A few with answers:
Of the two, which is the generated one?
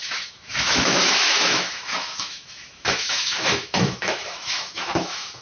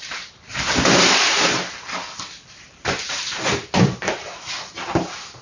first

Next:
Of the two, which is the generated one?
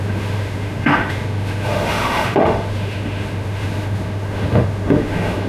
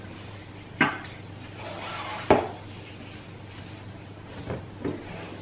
first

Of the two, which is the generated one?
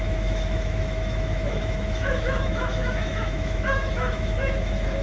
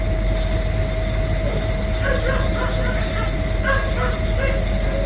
first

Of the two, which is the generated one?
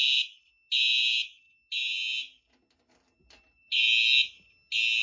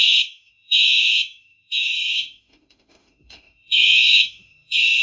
second